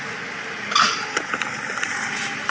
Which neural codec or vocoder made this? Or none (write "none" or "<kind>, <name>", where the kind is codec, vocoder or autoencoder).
none